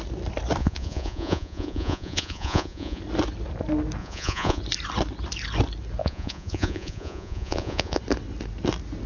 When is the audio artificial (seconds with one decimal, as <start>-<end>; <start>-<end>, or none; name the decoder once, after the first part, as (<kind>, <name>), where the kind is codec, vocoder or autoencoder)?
0.6-3.0 (vocoder, Vocos); 4.0-4.6; 6.0-8.0